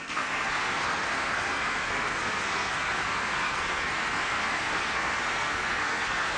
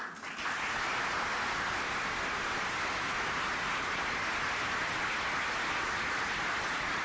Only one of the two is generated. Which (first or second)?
first